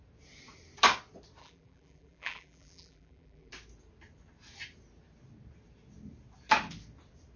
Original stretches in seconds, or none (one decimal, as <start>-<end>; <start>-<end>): 0.0-1.4; 3.5-7.4